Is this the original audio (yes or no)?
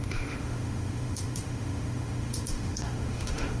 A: no